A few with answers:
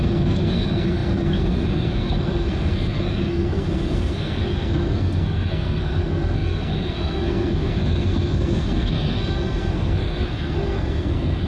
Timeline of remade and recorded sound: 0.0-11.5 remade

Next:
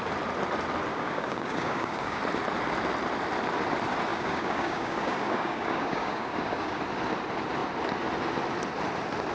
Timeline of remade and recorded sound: 0.0-0.9 recorded; 0.9-2.2 remade; 2.2-4.1 recorded; 4.1-6.8 remade; 6.8-9.3 recorded

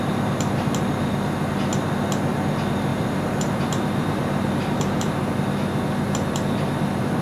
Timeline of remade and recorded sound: 0.0-2.9 recorded; 2.9-5.3 remade; 5.3-7.2 recorded

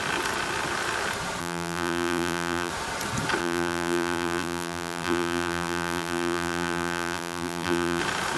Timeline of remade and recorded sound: 0.0-1.4 recorded; 1.4-2.7 remade; 2.7-3.4 recorded; 3.4-8.0 remade; 8.0-8.4 recorded

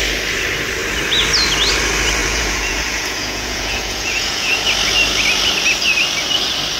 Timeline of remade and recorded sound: 0.0-2.2 recorded; 2.2-4.5 remade; 4.5-6.8 recorded

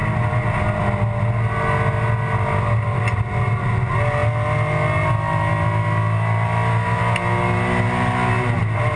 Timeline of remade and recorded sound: 0.0-9.0 recorded

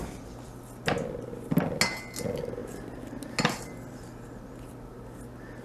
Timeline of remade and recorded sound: 0.0-5.6 recorded